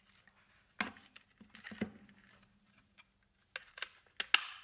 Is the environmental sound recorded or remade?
recorded